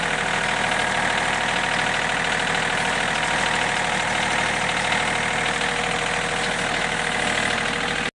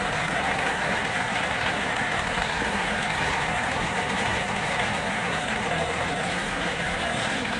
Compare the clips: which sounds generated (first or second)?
second